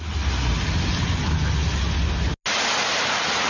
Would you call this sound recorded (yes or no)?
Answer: yes